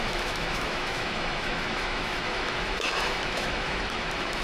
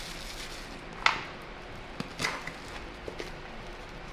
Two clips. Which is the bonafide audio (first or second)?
second